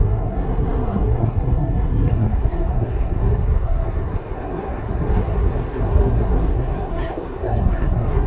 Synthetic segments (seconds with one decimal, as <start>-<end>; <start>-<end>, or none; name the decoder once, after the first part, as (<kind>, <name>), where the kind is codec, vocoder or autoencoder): 0.0-8.3 (codec, SNAC)

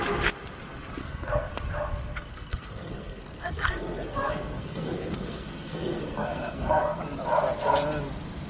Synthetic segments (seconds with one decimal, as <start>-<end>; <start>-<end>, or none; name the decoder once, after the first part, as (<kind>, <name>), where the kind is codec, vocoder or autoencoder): 1.0-1.5 (codec, SNAC); 2.3-7.0